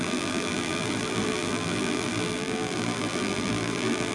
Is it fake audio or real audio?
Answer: fake